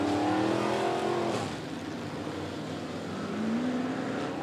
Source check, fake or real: real